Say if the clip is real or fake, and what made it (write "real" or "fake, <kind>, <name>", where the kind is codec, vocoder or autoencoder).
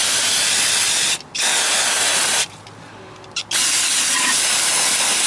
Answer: real